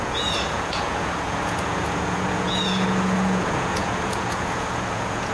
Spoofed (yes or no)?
yes